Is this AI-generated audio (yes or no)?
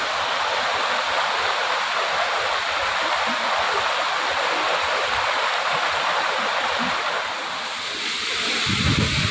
no